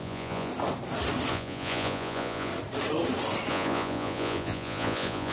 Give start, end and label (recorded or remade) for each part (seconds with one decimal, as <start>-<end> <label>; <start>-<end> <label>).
0.0-0.5 remade; 0.5-1.3 recorded; 1.3-2.5 remade; 2.5-3.5 recorded; 3.5-5.3 remade